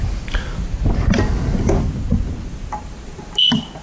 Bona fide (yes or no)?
yes